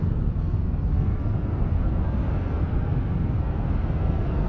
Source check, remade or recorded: remade